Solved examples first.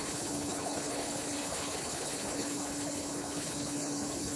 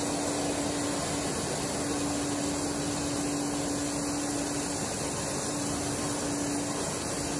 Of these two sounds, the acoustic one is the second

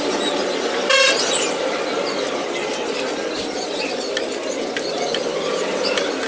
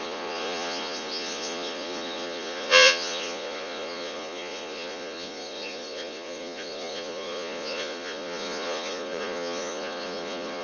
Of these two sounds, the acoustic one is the first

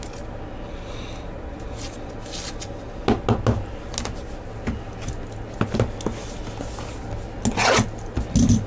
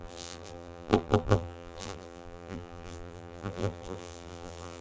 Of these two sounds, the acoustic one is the first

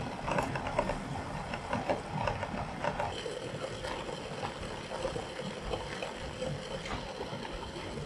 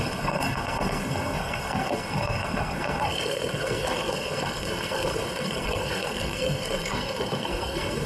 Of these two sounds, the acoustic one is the first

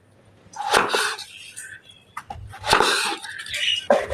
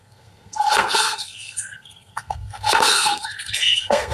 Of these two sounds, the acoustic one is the first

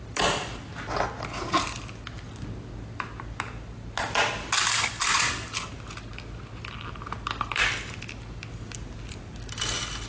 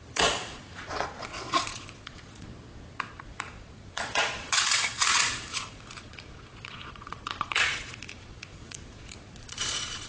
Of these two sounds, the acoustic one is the first